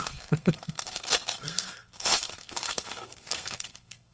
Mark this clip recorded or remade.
remade